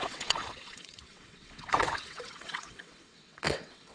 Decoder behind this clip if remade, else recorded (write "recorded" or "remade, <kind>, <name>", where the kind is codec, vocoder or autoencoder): remade, vocoder, WaveNeXt